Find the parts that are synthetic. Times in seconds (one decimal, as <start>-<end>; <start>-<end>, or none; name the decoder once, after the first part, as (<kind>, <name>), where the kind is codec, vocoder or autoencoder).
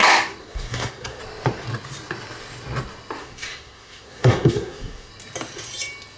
0.4-1.2 (codec, SNAC); 3.2-5.1